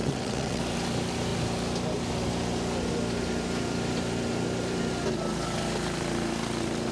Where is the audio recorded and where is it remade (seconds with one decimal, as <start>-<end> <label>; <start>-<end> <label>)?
0.0-0.6 remade; 0.6-6.9 recorded